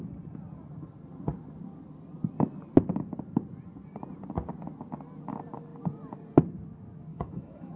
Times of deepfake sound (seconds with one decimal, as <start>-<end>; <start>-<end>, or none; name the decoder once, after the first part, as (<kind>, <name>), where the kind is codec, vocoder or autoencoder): 7.1-7.8 (autoencoder, DAC-VAE)

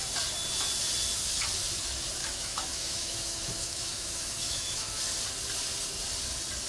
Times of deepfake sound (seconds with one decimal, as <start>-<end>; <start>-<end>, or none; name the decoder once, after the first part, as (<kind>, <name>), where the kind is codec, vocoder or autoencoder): 2.2-5.0 (autoencoder, DAC-VAE)